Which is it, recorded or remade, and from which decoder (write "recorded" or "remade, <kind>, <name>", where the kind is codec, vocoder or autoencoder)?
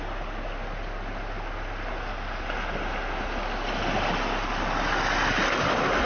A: recorded